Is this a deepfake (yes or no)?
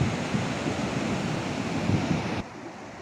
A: no